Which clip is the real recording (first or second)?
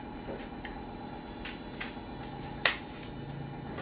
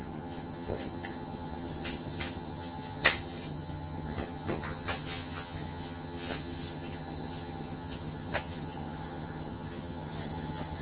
first